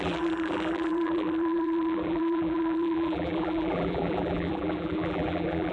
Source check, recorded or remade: remade